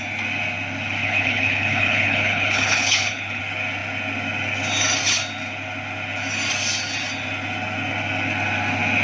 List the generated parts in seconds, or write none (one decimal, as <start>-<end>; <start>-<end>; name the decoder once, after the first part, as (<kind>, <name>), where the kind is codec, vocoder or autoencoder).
1.0-3.4 (codec, HILCodec)